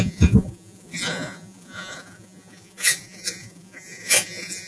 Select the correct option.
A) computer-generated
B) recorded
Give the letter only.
A